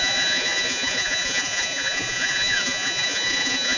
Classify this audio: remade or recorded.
remade